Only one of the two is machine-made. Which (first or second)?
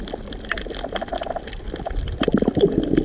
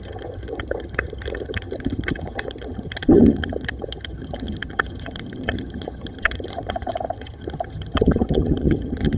second